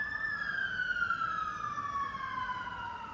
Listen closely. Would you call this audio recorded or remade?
recorded